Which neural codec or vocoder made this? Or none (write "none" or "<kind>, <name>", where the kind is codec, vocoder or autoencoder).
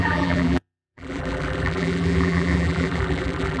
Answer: vocoder, BigVGAN v2